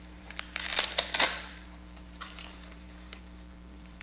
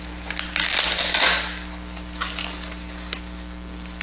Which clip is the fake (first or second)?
first